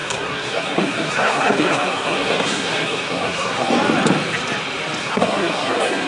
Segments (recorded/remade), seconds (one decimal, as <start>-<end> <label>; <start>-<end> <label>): 0.0-3.7 remade; 3.7-5.0 recorded; 5.0-6.1 remade